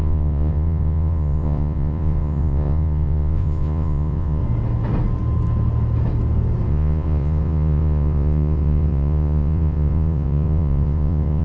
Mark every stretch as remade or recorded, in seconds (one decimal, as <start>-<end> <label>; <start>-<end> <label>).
0.0-4.4 remade; 4.4-6.7 recorded; 6.7-11.4 remade